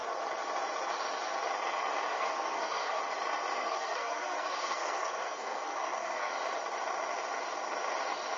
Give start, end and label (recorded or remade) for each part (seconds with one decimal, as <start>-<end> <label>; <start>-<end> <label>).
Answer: 0.0-2.1 recorded; 2.1-3.0 remade; 3.0-3.5 recorded; 3.5-6.3 remade; 6.3-8.4 recorded